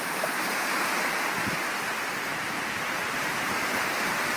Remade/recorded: remade